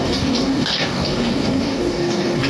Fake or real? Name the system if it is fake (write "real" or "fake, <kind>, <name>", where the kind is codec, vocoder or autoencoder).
fake, codec, DAC